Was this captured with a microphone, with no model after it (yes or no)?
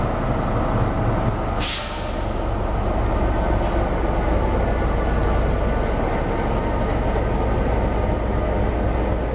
yes